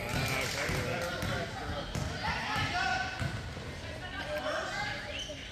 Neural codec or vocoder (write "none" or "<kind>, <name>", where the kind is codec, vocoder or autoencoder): none